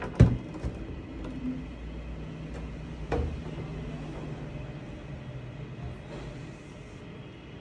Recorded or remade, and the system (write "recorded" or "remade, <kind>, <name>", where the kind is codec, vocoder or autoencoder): recorded